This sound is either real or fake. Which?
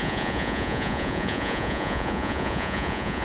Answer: fake